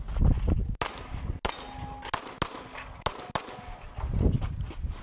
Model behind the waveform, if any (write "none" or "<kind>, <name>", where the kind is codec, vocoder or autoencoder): none